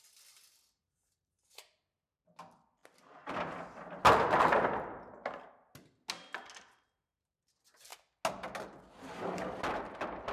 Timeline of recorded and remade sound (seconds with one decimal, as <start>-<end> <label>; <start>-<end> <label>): 0.0-10.3 recorded